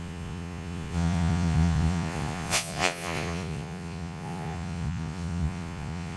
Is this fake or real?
fake